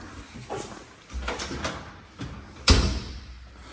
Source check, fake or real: real